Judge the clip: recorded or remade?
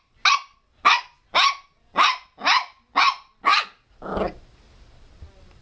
recorded